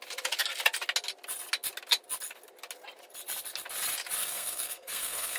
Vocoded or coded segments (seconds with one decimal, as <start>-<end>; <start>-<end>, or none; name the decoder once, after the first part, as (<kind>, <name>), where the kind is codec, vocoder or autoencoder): 4.2-5.4 (codec, SNAC)